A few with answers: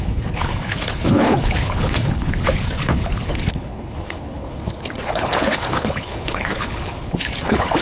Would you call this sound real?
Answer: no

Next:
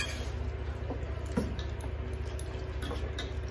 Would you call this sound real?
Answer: yes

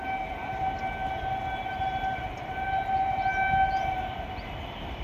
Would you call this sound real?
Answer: yes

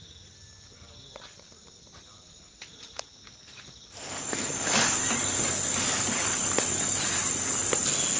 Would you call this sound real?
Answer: yes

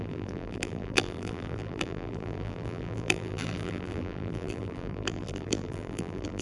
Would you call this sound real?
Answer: no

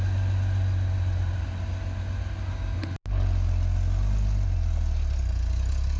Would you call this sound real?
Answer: yes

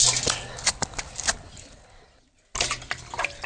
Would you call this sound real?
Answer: yes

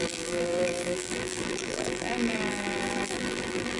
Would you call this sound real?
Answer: no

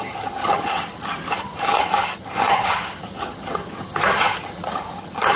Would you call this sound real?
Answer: no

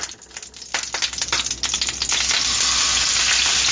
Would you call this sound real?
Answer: yes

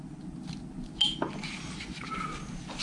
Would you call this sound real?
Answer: yes